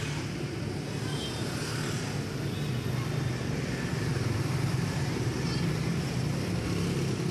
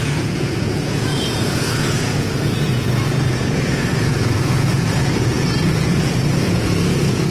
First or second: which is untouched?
first